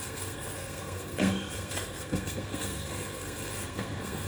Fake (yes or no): yes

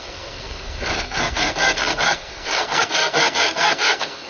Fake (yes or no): yes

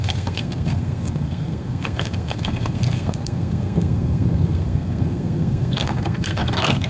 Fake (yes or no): yes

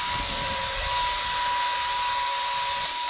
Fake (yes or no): no